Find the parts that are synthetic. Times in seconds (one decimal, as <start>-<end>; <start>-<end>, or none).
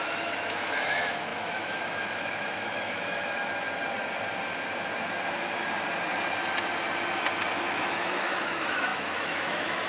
0.0-3.5; 7.9-9.9